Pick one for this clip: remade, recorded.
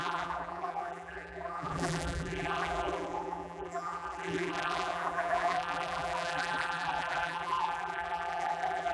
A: remade